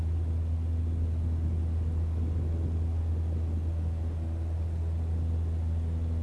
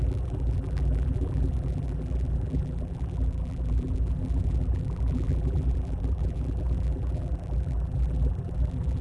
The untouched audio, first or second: first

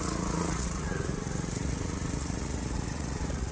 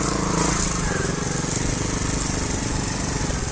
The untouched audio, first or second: second